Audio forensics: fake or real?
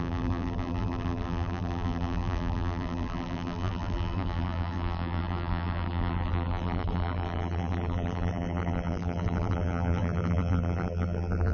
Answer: fake